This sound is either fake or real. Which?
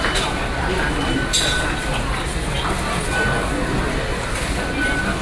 real